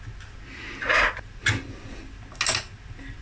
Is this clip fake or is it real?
real